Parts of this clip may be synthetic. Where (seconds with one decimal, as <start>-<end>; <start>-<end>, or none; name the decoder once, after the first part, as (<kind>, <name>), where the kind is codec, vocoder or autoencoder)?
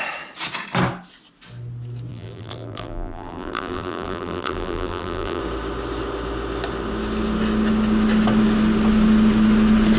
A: 2.1-5.4 (vocoder, BigVGAN v2)